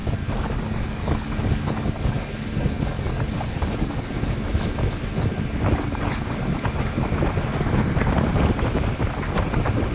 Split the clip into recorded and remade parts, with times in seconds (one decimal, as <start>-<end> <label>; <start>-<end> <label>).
0.0-4.1 remade; 4.1-9.9 recorded